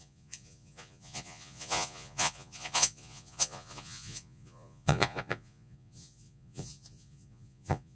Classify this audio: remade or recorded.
remade